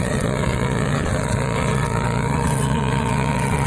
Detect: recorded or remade remade